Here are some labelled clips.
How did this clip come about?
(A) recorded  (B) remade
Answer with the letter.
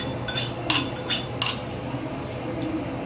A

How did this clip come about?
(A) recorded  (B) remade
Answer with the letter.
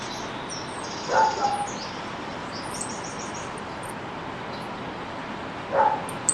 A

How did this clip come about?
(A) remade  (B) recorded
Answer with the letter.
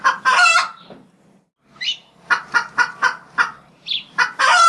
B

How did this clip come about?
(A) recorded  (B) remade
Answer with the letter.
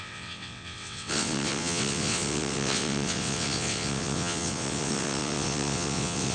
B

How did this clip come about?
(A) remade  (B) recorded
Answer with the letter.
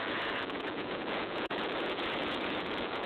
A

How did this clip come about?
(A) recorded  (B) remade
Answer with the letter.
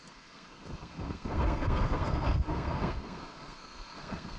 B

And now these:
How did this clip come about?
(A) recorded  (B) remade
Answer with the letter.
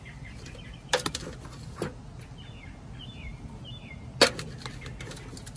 A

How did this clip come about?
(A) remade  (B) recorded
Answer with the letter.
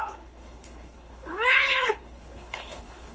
A